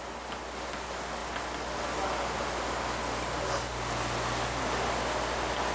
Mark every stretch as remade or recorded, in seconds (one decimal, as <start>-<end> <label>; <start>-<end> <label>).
0.0-5.7 recorded

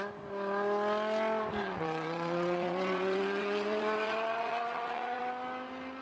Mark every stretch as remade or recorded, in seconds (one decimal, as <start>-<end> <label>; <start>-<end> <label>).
0.0-1.6 recorded; 1.6-5.2 remade; 5.2-6.0 recorded

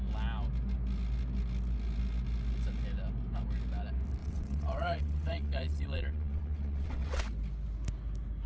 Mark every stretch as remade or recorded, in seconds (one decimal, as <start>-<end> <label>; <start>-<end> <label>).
0.0-4.2 recorded; 4.2-7.2 remade; 7.2-8.5 recorded

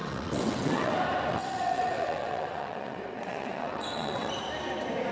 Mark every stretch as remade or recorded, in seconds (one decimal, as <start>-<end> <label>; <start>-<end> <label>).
0.0-0.9 remade; 0.9-1.3 recorded; 1.3-4.4 remade; 4.4-5.1 recorded

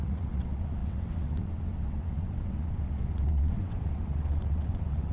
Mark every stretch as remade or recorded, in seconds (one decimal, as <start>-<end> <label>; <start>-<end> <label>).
0.0-5.1 remade

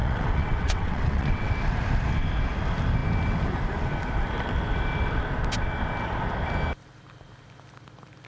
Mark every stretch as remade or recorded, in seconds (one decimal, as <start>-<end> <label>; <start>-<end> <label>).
0.0-1.5 remade; 1.5-8.3 recorded